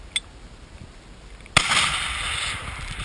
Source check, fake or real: real